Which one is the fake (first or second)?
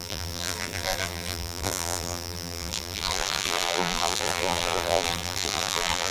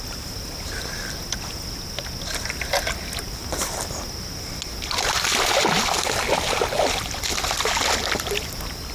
first